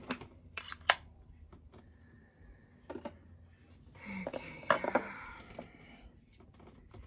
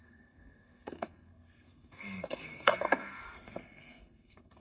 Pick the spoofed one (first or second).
second